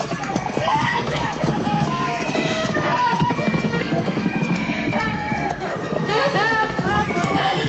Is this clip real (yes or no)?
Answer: no